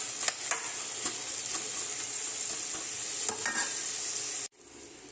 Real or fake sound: real